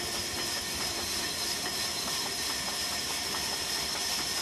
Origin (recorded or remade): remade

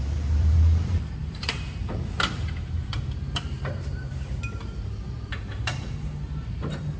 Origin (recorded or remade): remade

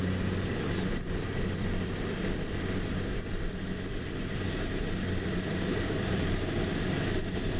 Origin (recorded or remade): remade